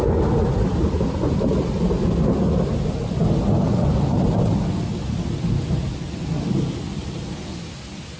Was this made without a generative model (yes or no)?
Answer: yes